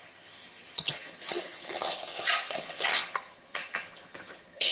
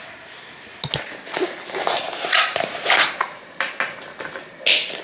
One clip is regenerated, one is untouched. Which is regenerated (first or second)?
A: first